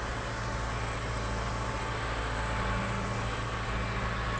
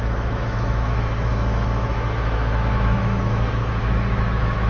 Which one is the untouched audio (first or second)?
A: first